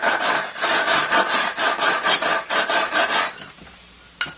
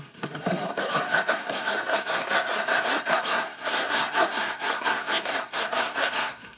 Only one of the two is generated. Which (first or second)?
second